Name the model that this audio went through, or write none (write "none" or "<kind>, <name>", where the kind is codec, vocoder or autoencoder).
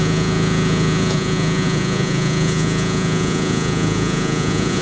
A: vocoder, Vocos